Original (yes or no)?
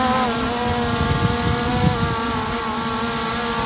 yes